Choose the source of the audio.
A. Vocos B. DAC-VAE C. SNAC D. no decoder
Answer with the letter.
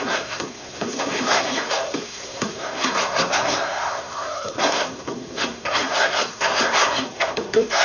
C